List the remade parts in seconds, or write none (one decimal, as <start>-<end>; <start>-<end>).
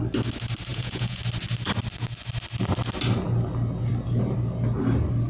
0.7-1.2